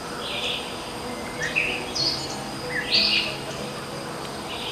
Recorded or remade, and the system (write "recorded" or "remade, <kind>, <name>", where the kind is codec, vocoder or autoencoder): recorded